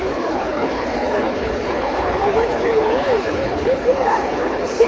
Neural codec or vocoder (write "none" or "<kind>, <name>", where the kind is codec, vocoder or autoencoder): codec, HILCodec